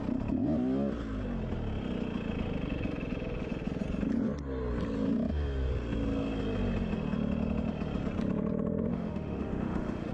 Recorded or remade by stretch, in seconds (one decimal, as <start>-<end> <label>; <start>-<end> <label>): 0.0-8.9 recorded; 8.9-10.1 remade

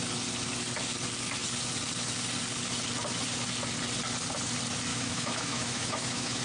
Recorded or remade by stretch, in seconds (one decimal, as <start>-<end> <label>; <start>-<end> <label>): 0.0-4.9 recorded; 4.9-6.4 remade